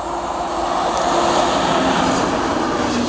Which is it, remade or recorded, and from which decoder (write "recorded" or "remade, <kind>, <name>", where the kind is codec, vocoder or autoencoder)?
recorded